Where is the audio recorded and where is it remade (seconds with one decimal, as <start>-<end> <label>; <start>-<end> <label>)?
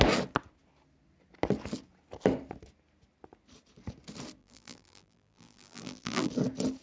0.0-4.4 recorded; 4.4-6.3 remade; 6.3-6.8 recorded